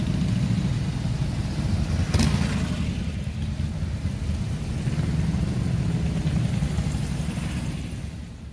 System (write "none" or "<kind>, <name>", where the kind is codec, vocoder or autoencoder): none